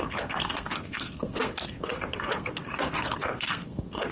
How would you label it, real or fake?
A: fake